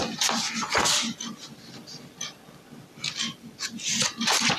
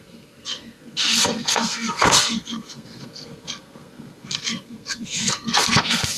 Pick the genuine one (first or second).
first